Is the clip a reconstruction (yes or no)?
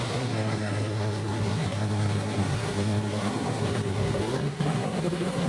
yes